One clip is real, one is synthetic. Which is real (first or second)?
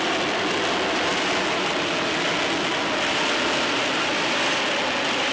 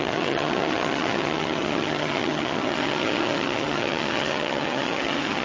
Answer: first